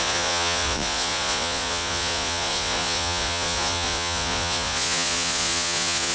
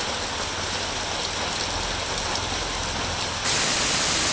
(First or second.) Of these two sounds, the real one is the second